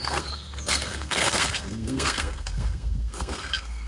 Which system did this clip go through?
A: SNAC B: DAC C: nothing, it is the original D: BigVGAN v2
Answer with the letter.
A